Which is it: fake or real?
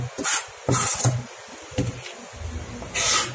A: real